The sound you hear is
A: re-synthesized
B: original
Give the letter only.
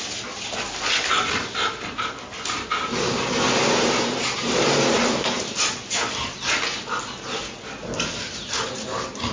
B